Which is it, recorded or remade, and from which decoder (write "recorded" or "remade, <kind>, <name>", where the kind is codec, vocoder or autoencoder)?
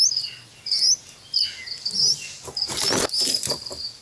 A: recorded